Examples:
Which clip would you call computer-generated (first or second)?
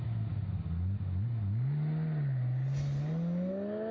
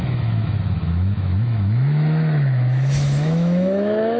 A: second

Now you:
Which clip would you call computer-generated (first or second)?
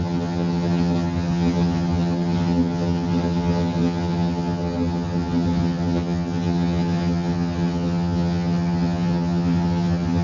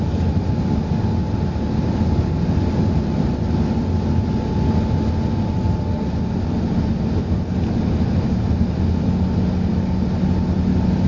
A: first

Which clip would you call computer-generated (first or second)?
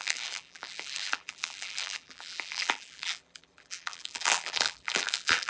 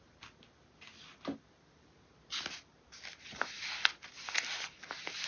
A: first